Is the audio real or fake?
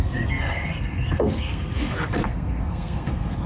fake